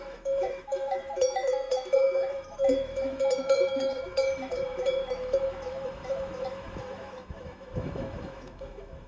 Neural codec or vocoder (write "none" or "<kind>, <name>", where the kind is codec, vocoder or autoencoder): autoencoder, DAC-VAE